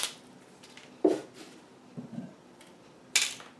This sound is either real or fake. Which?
real